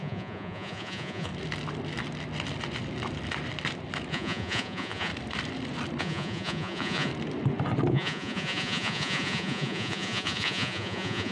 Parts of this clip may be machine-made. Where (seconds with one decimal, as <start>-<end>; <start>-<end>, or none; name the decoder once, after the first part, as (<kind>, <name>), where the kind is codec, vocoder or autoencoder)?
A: 0.0-1.3 (vocoder, Vocos); 4.1-5.1; 6.0-7.1; 7.9-11.3